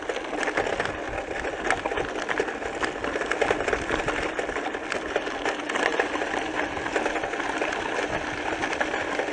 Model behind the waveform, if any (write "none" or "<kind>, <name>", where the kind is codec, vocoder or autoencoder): none